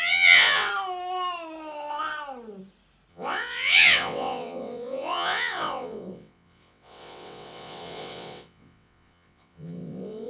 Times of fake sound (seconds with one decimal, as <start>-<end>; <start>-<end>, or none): 0.0-0.7; 3.1-10.3

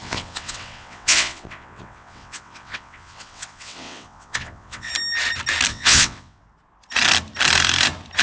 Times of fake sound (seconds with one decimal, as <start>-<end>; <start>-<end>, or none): 0.0-4.9; 5.7-6.4